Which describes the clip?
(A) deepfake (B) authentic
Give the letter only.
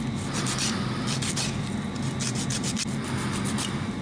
B